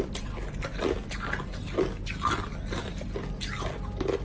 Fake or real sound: real